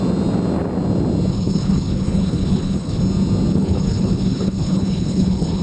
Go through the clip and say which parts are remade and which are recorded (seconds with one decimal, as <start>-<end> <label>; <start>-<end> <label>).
0.0-1.3 recorded; 1.3-3.0 remade; 3.0-3.5 recorded; 3.5-5.6 remade